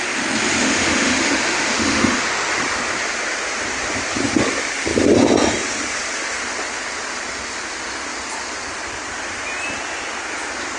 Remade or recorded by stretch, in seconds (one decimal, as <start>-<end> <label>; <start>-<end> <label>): 0.0-0.6 recorded; 0.6-2.5 remade; 2.5-10.8 recorded